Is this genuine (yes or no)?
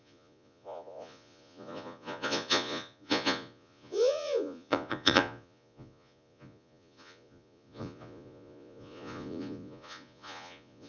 no